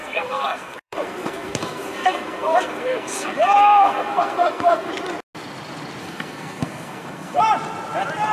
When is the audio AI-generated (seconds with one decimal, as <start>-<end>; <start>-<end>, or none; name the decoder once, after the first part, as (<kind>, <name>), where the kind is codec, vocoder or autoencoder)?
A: 0.0-4.9 (codec, SNAC); 6.0-7.4